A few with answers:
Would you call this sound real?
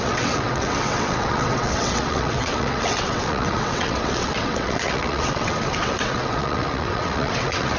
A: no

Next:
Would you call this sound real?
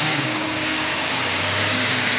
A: no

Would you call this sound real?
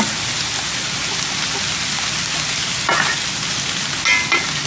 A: yes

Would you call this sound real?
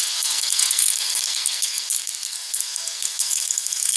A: no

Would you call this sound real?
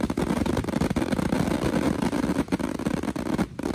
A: yes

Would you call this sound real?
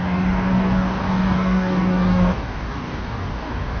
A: no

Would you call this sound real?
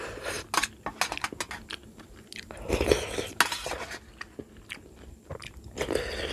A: yes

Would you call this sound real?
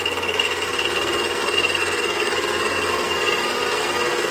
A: no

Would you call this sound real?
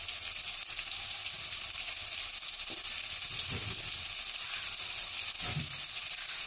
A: yes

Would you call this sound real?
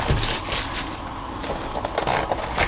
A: yes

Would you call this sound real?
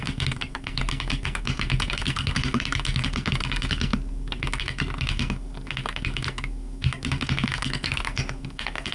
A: no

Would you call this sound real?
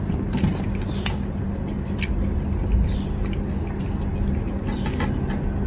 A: yes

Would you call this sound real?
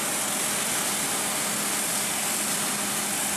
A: yes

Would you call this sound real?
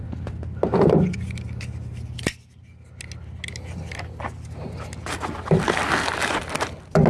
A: yes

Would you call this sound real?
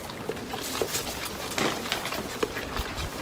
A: yes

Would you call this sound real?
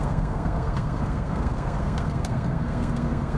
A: no